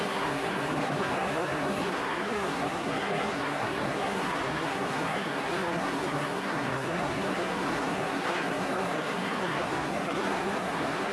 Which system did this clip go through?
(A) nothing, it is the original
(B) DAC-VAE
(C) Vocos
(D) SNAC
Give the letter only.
D